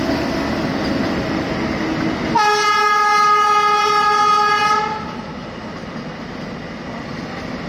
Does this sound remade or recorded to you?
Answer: recorded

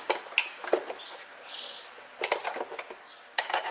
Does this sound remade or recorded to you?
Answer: recorded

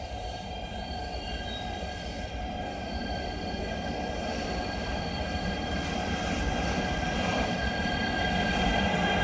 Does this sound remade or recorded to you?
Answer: remade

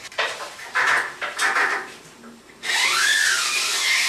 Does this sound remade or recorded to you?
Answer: remade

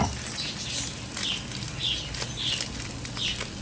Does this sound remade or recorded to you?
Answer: recorded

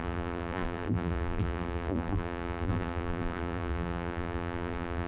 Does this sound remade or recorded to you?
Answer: remade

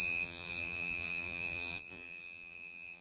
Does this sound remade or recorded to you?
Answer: remade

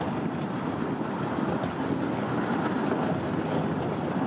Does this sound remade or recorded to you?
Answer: recorded